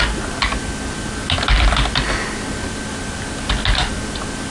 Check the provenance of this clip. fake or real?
real